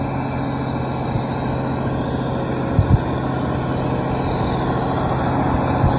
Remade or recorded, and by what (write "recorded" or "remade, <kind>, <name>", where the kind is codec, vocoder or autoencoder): recorded